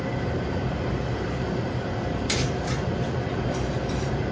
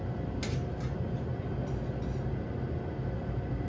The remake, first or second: first